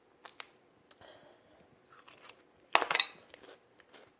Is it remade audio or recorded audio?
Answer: recorded